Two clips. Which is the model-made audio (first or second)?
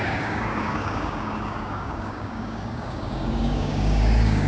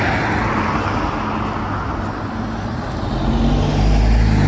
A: first